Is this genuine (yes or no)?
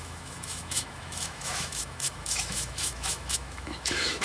no